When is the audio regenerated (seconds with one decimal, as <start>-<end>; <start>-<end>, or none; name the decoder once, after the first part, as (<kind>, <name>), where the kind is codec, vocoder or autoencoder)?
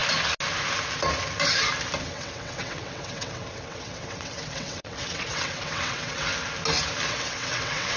2.0-6.3 (vocoder, WaveNeXt); 7.1-8.0